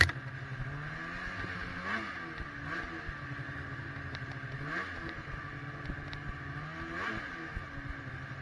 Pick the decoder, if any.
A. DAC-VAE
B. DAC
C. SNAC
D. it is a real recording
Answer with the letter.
D